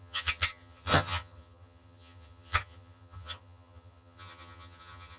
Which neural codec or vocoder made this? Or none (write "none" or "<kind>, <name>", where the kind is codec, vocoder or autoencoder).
vocoder, HiFi-GAN